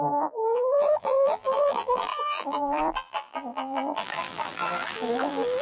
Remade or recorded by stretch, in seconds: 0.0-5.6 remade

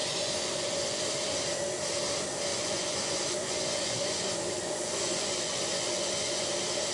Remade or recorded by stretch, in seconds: 0.0-1.0 remade; 1.0-2.5 recorded; 2.5-6.5 remade; 6.5-6.9 recorded

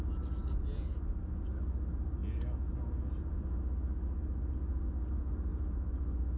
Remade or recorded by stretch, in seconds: 0.0-6.4 recorded

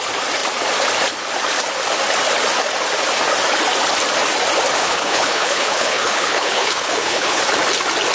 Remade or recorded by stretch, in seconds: 0.0-4.8 recorded; 4.8-7.4 remade; 7.4-8.1 recorded